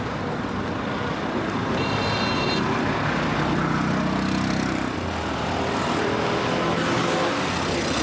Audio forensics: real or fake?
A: real